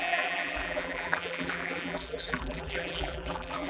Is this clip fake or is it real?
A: fake